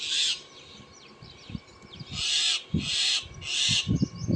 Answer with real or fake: real